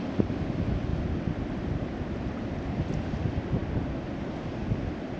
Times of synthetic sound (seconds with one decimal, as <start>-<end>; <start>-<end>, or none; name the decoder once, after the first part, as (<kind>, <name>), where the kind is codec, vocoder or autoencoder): none